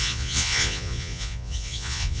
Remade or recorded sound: remade